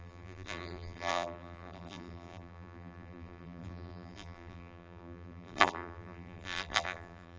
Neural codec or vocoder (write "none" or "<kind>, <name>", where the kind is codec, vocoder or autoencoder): vocoder, BigVGAN v2